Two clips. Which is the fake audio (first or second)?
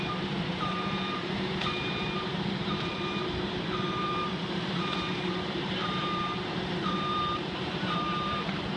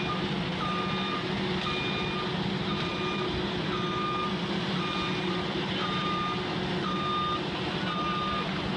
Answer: first